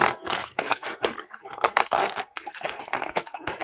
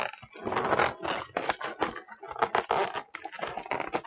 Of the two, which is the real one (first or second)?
second